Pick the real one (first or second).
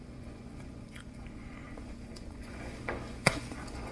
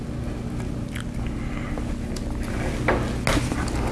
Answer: second